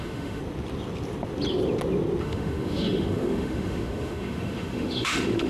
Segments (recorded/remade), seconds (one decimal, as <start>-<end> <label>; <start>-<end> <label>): 0.0-0.4 remade; 0.4-2.2 recorded; 2.2-5.5 remade